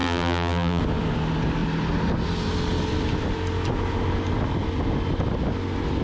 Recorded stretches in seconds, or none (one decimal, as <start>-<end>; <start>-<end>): 0.8-6.0